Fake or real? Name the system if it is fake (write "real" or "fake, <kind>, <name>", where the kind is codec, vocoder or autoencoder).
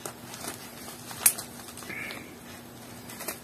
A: real